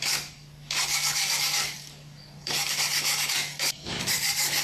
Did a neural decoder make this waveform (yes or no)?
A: yes